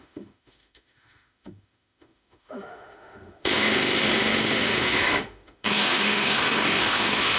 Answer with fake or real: fake